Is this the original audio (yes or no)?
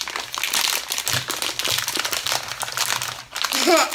yes